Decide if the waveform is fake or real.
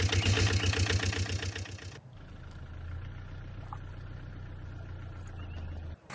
real